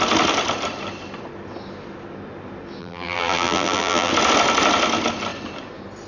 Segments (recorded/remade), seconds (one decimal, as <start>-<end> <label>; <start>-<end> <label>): 0.0-2.8 recorded; 2.8-4.1 remade; 4.1-6.1 recorded